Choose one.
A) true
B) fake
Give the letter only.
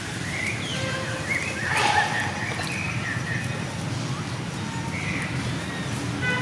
A